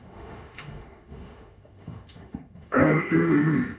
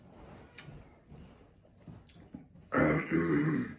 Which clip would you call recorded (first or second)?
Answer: second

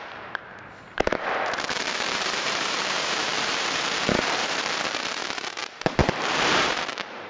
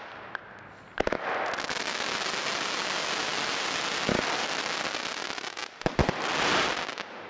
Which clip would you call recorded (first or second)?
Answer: second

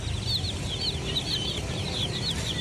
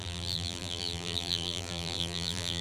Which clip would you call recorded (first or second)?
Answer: first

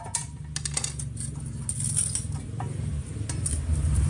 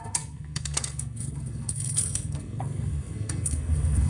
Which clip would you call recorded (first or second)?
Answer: first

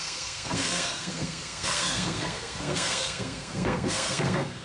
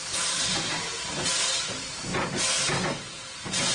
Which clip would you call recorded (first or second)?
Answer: second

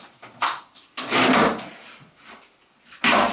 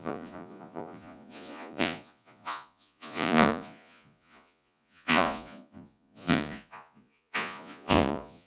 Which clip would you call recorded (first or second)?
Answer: first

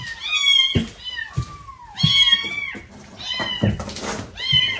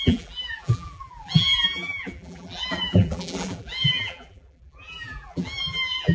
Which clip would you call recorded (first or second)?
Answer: first